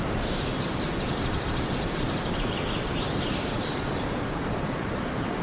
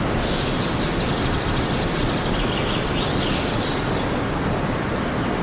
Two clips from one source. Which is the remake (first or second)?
first